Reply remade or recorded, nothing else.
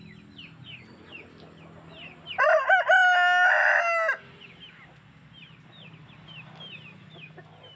recorded